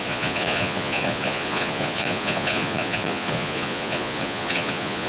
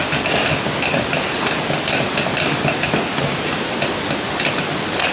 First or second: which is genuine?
second